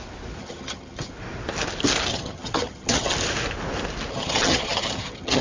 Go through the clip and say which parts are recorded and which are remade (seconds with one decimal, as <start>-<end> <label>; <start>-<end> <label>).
0.0-0.4 recorded; 0.4-1.1 remade; 1.1-2.1 recorded; 2.1-3.1 remade; 3.1-4.1 recorded; 4.1-5.4 remade